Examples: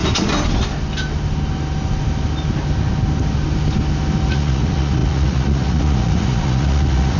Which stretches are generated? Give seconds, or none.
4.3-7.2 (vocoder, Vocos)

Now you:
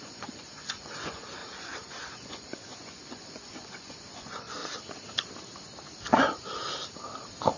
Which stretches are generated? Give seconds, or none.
0.0-4.6 (vocoder, Vocos)

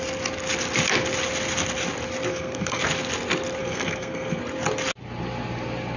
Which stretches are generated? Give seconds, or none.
2.3-2.8 (codec, SNAC); 3.6-4.4

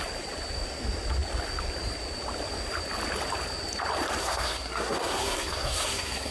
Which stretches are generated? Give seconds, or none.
4.2-6.3 (codec, SNAC)

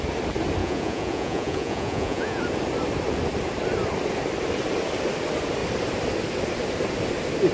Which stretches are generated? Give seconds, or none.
0.6-2.4 (vocoder, Vocos)